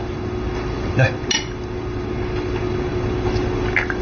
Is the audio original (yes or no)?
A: yes